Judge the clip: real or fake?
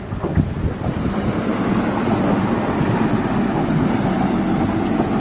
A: real